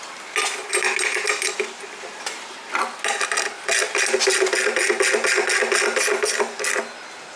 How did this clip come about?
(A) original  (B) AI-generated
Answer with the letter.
A